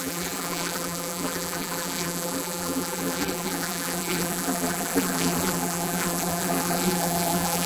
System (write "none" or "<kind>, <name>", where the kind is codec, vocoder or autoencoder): vocoder, BigVGAN v2